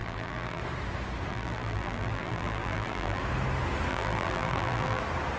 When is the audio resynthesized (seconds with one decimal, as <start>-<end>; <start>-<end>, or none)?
0.0-0.6; 1.3-3.2; 3.9-5.0